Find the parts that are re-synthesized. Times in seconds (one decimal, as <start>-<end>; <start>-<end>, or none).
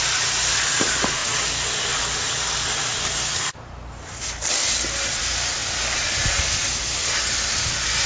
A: none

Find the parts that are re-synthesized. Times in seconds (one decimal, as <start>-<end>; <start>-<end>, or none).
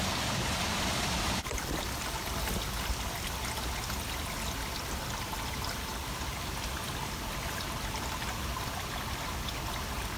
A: none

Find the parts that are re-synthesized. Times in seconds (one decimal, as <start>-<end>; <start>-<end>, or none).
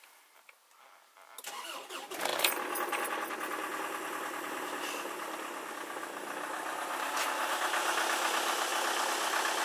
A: none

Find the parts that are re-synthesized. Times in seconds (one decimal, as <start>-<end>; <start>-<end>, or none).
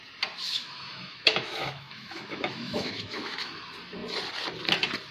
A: 0.4-3.5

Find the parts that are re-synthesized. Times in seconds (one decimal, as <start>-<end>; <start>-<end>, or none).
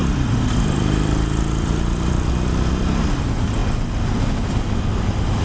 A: 0.0-2.3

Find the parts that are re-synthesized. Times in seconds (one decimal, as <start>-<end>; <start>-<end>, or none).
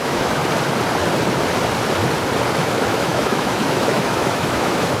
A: 0.0-0.4; 2.6-5.0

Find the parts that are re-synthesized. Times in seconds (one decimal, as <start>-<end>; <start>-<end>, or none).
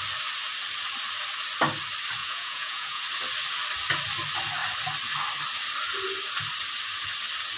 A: 2.2-3.0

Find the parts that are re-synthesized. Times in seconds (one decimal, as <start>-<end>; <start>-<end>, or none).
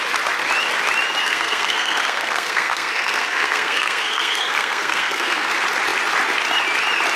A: 1.2-5.5